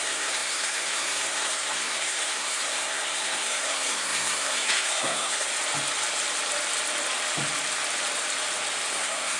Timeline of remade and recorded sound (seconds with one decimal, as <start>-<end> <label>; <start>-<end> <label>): 0.0-5.5 remade; 5.5-8.9 recorded; 8.9-9.4 remade